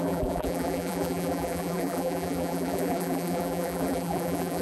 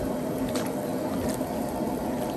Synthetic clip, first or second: first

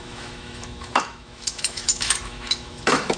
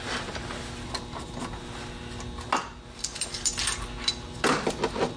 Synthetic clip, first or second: first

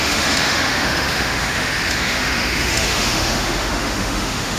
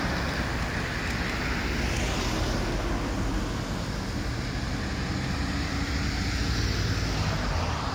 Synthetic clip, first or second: first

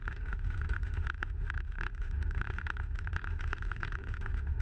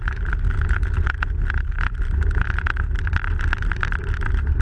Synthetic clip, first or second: first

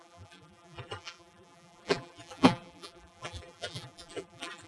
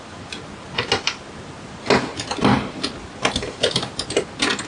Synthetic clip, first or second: first